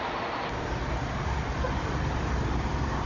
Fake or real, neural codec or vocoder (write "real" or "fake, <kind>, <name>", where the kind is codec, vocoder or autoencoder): real